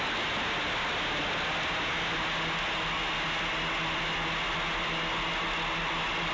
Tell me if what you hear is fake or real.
real